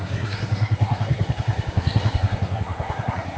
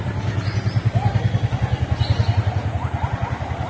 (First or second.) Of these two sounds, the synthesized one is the first